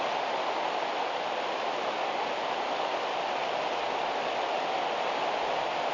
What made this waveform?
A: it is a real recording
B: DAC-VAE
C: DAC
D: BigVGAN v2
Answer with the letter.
A